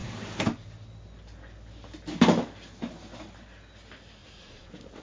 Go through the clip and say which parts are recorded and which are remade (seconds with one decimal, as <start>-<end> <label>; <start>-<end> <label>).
0.0-4.2 recorded; 4.2-5.0 remade